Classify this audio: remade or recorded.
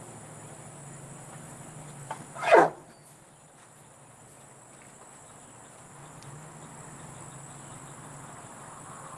recorded